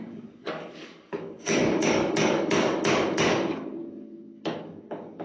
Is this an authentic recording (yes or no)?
no